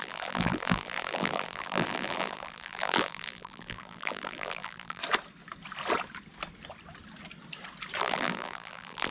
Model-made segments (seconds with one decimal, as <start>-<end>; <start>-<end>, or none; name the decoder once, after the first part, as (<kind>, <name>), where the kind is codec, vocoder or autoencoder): 0.0-5.0 (vocoder, BigVGAN v2); 8.0-9.1